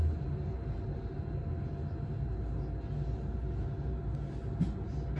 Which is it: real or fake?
real